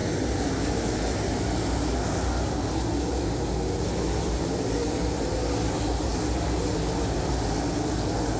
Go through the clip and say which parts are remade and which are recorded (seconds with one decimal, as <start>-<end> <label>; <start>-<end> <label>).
0.0-8.4 recorded